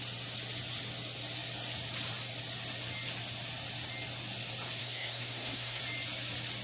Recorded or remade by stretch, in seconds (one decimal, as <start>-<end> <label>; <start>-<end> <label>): 0.0-4.8 recorded; 4.8-5.8 remade; 5.8-6.6 recorded